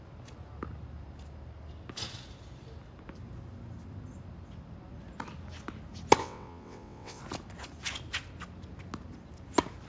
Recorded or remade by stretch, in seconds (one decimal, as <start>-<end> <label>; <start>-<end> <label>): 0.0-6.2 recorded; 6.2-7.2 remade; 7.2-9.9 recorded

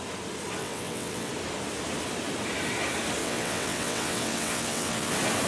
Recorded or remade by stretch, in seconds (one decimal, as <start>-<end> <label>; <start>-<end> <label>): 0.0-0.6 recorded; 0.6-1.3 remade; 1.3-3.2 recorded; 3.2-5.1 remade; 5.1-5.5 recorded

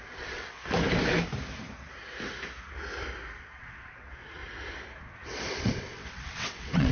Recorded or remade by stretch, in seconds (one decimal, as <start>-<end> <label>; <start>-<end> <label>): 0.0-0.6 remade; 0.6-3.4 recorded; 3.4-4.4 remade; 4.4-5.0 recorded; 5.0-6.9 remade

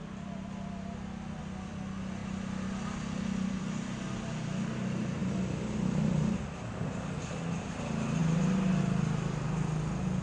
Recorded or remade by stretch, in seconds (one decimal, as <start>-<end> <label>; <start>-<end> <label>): 0.0-10.2 recorded

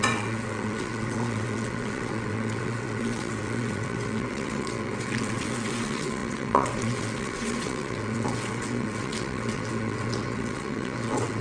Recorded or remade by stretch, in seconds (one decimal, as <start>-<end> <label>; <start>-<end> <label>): 0.0-11.4 remade